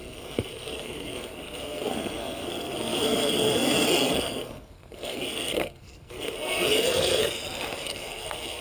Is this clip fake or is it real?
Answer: fake